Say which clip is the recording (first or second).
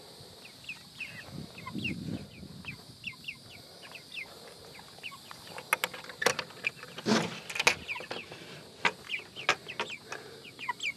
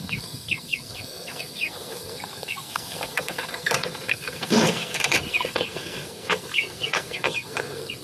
first